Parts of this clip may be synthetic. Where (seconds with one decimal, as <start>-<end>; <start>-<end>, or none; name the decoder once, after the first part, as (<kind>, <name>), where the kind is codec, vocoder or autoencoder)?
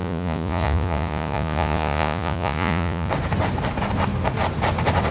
0.0-3.1 (vocoder, Vocos)